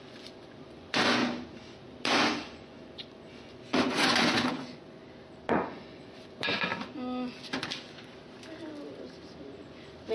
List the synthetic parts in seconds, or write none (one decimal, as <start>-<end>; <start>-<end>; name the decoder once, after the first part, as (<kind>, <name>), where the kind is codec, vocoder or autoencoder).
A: 0.0-1.2 (vocoder, Vocos); 2.2-5.0; 5.5-6.7; 9.6-10.1